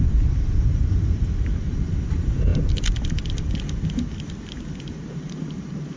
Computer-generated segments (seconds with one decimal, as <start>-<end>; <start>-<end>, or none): 0.0-2.5; 4.8-6.0

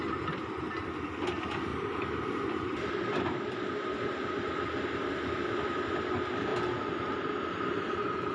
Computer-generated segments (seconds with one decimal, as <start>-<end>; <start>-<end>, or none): 1.7-5.1; 6.5-7.6

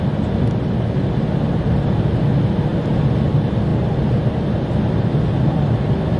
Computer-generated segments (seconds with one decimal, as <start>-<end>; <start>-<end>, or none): none

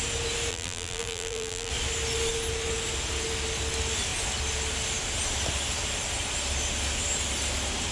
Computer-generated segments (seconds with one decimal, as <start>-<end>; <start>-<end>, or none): 0.5-1.7

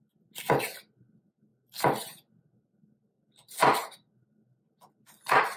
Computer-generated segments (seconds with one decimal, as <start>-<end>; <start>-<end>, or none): none

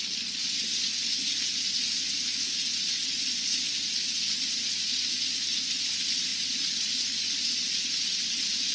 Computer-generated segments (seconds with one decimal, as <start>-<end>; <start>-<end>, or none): 6.3-6.9